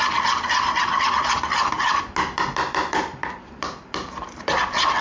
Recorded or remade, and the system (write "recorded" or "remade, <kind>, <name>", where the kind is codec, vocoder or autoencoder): recorded